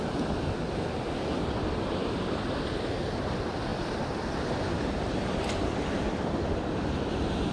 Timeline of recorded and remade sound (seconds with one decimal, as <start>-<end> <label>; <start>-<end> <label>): 0.0-3.7 recorded; 3.7-6.6 remade; 6.6-7.5 recorded